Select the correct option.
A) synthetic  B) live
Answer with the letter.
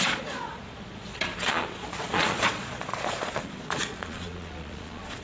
A